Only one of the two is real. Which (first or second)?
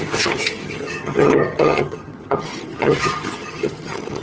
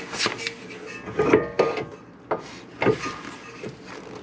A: second